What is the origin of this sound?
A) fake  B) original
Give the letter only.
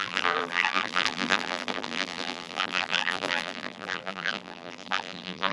A